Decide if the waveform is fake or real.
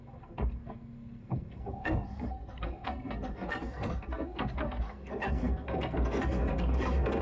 fake